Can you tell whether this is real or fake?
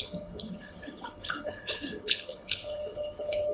fake